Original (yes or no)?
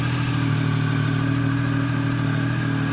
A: yes